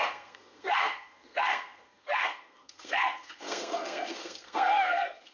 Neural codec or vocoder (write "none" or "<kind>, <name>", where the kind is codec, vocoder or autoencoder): codec, SNAC